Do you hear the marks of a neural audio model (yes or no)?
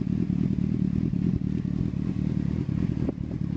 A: no